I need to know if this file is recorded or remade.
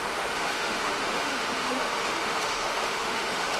remade